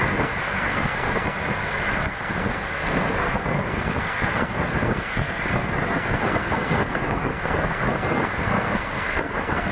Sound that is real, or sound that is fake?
fake